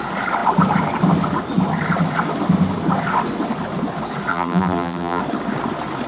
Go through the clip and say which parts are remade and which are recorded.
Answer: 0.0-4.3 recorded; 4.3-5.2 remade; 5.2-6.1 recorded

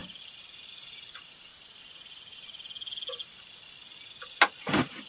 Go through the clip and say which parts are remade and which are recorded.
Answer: 0.0-1.5 remade; 1.5-4.6 recorded; 4.6-5.1 remade